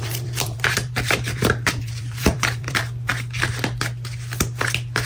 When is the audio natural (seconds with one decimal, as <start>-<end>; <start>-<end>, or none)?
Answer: 3.1-5.1

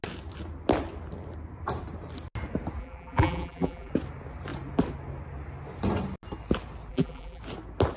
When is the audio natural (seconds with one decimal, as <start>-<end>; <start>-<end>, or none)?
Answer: 0.0-2.8; 3.9-6.9; 7.4-8.0

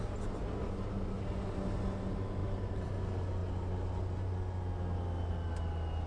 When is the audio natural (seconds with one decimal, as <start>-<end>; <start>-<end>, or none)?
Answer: 0.0-2.4; 2.9-6.1

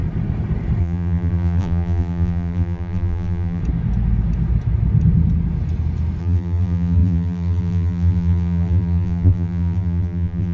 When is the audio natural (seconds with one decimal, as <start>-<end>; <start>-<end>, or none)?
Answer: 0.0-0.8; 3.6-6.2

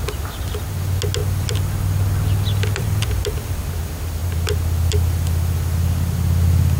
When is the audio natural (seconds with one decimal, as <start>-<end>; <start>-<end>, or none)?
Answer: 0.0-1.2; 3.6-6.8